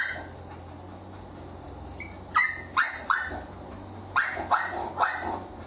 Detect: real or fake real